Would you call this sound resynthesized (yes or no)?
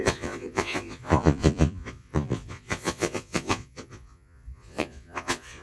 yes